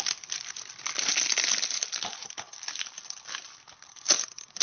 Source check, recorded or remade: recorded